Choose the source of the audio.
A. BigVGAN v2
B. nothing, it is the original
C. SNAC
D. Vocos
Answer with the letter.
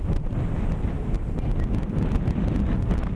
B